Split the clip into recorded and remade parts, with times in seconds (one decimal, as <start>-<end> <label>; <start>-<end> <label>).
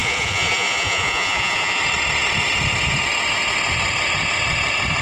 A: 0.0-1.8 remade; 1.8-5.0 recorded